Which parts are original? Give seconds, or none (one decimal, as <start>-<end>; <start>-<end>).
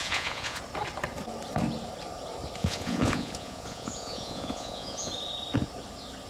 0.6-2.6; 5.1-6.3